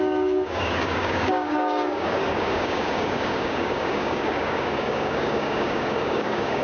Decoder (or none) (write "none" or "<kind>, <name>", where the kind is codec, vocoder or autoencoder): codec, DAC